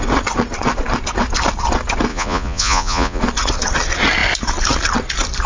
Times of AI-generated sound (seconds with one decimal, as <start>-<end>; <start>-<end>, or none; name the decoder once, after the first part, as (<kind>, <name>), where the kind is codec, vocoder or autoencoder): 2.1-3.2 (vocoder, Vocos)